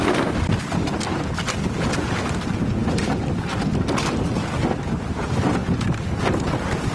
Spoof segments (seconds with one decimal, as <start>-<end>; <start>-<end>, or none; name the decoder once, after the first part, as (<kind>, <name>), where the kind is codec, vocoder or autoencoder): none